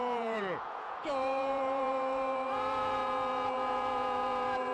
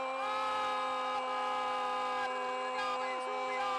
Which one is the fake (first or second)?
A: first